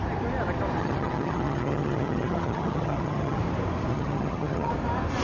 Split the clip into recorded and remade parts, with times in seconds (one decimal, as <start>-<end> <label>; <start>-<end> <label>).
0.0-0.8 recorded; 0.8-3.4 remade; 3.4-3.9 recorded; 3.9-4.7 remade; 4.7-5.2 recorded

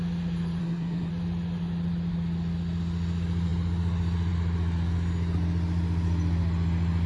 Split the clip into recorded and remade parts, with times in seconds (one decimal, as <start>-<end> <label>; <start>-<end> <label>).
0.0-0.6 recorded; 0.6-1.1 remade; 1.1-7.1 recorded

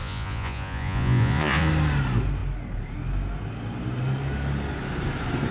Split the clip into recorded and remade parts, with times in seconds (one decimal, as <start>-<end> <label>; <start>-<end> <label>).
0.0-1.7 remade; 1.7-5.5 recorded

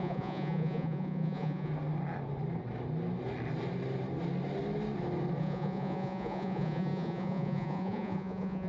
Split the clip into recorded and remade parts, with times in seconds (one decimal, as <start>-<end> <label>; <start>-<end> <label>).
0.0-1.7 remade; 1.7-5.4 recorded; 5.4-8.7 remade

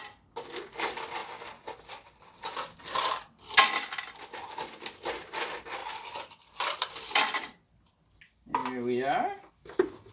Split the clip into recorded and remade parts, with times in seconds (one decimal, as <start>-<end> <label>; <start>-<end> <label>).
0.0-5.8 recorded; 5.8-8.2 remade; 8.2-10.1 recorded